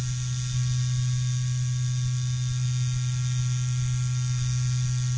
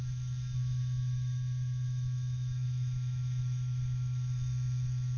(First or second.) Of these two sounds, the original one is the first